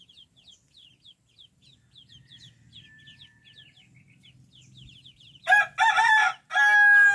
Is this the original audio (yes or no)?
yes